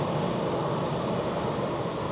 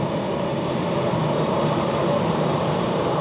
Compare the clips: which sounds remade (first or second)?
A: second